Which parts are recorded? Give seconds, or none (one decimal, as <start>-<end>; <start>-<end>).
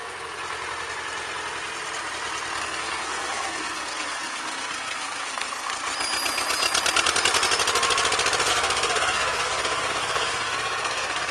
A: 0.0-2.6; 5.7-8.5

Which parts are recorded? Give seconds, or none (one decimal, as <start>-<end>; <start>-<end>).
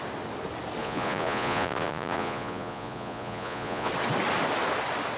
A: 0.0-0.8; 3.9-5.2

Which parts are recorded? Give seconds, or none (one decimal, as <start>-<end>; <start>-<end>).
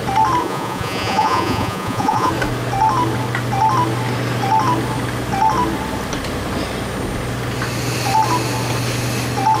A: 0.0-0.4; 2.3-9.6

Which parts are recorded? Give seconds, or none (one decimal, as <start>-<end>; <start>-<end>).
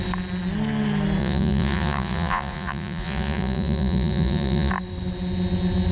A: 0.0-1.2; 4.7-5.9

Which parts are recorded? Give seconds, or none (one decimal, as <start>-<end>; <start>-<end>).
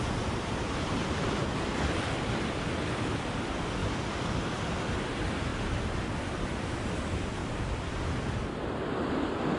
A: 5.5-6.7; 7.4-9.6